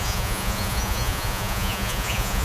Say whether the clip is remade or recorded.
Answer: remade